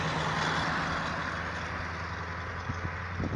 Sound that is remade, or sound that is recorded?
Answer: recorded